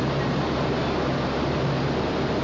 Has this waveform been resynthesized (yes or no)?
yes